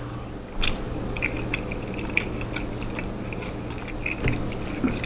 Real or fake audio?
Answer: real